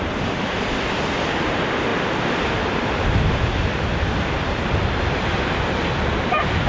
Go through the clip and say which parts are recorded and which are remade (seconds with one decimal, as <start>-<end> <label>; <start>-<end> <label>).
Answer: 0.0-6.7 recorded